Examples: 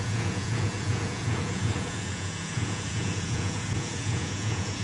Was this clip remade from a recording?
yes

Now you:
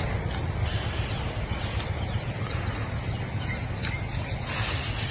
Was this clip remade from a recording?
no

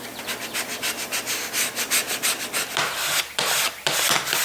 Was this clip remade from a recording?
no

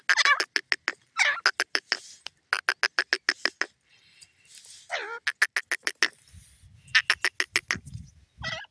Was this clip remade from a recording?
no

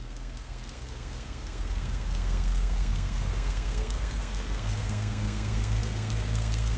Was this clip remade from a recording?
yes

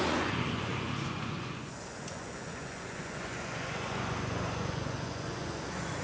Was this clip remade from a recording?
yes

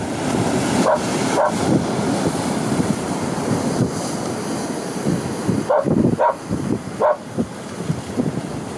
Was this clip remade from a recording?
no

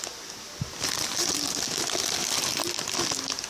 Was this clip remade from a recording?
no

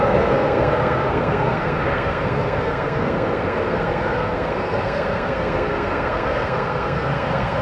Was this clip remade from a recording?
yes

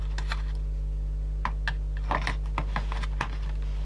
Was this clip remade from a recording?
no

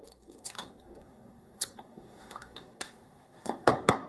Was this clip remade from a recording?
yes